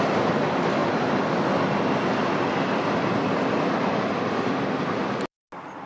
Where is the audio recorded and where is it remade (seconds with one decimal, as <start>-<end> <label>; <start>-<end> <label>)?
0.0-5.9 recorded